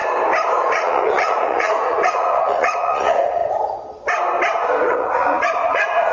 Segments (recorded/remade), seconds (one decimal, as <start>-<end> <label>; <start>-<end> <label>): 0.0-0.6 recorded; 0.6-3.4 remade; 3.4-4.9 recorded; 4.9-6.1 remade